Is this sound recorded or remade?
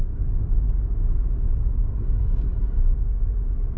recorded